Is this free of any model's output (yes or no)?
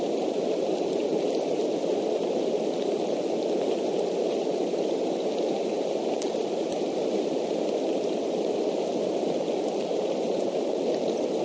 yes